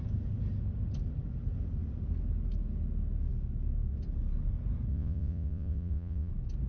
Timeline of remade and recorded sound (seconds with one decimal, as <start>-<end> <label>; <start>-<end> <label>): 0.0-4.9 recorded; 4.9-6.3 remade; 6.3-6.7 recorded